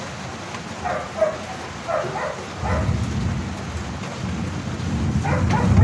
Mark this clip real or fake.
real